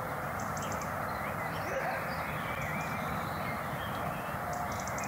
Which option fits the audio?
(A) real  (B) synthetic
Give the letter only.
A